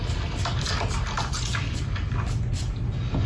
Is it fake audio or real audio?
real